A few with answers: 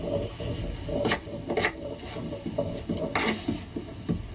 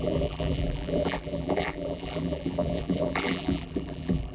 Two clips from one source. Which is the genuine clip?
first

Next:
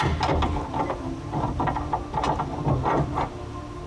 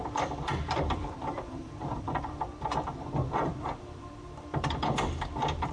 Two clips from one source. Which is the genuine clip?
first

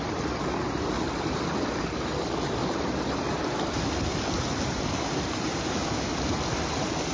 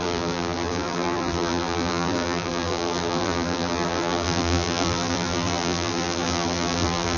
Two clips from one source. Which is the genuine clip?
first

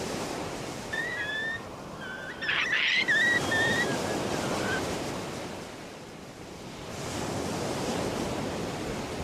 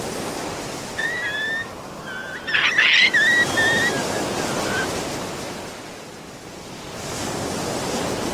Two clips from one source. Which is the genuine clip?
second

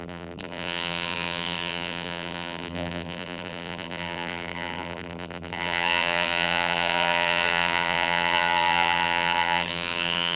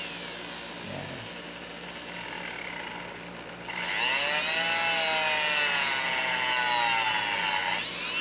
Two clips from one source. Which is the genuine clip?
second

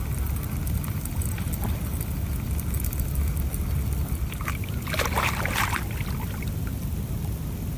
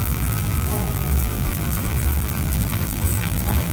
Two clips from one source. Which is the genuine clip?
first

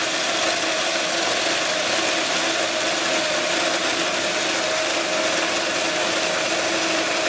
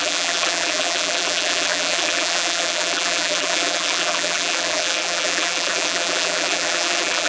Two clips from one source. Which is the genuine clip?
first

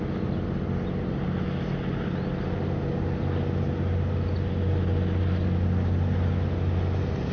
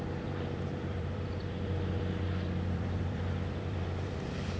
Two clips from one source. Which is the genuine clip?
first